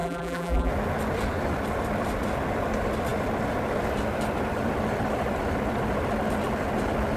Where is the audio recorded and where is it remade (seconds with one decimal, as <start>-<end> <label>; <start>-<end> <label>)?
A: 0.0-0.7 remade; 0.7-7.2 recorded